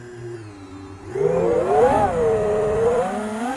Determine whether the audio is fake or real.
real